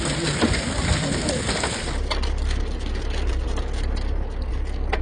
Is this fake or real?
real